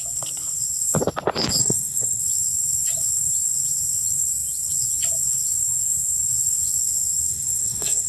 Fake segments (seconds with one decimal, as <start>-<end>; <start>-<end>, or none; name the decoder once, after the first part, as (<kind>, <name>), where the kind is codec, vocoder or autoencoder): 1.6-2.2 (codec, SNAC); 7.3-8.1

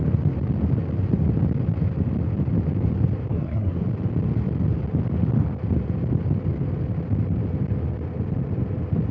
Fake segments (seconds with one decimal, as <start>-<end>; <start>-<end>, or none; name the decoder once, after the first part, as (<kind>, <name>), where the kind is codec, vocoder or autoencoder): 3.3-3.8 (codec, SNAC)

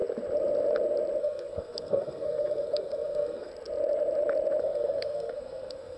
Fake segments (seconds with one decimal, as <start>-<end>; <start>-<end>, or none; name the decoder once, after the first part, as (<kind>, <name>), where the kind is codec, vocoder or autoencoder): 1.2-3.5 (codec, SNAC); 4.6-6.0

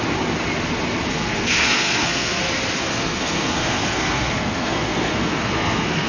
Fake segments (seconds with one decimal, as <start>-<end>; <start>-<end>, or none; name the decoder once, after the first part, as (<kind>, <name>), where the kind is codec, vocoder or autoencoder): 1.1-2.4 (codec, SNAC); 2.9-6.1

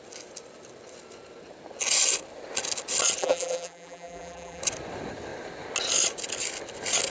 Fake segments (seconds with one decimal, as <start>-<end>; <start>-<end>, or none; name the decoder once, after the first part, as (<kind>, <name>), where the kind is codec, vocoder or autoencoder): 3.2-4.6 (vocoder, BigVGAN v2)

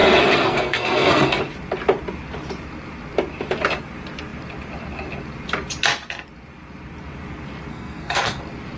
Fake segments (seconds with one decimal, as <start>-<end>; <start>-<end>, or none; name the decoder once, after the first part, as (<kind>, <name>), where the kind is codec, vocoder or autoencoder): 0.0-1.4 (codec, SNAC); 7.7-8.4

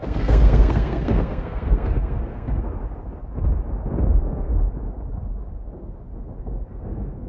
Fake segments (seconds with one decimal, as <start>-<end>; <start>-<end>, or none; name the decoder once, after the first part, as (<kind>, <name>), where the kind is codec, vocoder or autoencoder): 0.0-2.8 (codec, SNAC); 4.1-4.5; 6.4-7.3

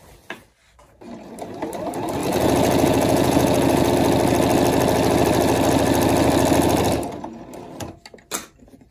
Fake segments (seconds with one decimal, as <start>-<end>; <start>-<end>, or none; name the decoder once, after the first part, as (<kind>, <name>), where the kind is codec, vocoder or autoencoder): 2.2-3.9 (vocoder, Vocos)